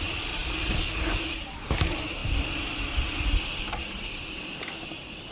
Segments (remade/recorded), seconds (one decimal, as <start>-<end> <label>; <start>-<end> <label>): 0.0-5.3 recorded